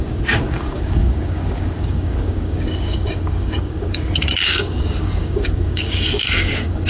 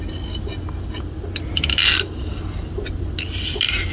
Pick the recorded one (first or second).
second